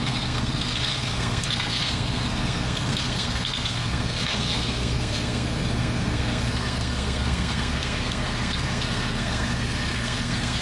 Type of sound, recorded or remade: remade